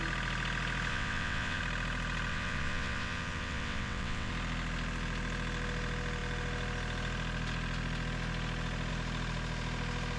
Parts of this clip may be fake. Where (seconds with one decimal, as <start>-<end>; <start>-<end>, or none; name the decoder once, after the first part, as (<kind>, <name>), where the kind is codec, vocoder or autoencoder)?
0.9-1.6 (vocoder, WaveNeXt); 2.3-4.3